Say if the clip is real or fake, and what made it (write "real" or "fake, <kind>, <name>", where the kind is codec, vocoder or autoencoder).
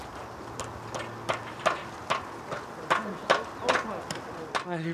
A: real